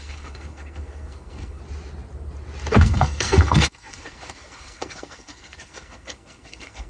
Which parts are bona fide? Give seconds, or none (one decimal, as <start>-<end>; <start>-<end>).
1.6-2.7